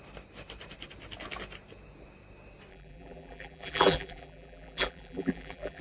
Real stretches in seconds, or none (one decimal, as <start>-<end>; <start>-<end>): 0.0-2.7